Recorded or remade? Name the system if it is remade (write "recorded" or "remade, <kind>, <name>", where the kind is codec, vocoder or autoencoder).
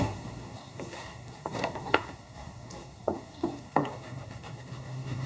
remade, codec, SNAC